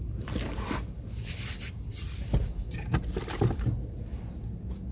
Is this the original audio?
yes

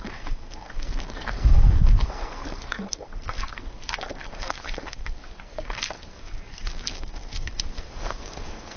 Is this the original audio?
no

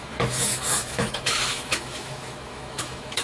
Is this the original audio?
no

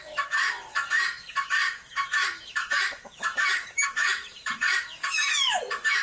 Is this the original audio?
no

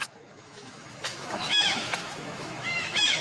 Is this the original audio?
no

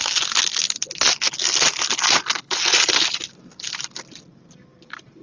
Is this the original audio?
yes